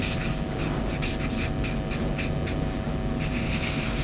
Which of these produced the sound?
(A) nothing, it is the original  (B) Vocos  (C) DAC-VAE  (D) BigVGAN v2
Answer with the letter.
A